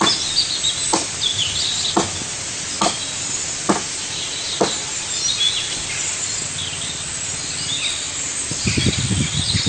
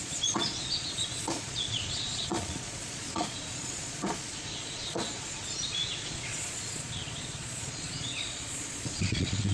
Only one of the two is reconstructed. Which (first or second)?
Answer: second